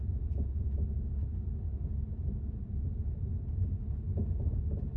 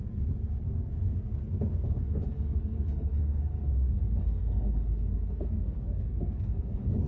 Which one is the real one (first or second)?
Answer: first